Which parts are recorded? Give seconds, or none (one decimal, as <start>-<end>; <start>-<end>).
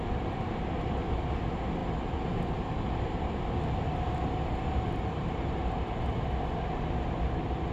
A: 0.0-7.7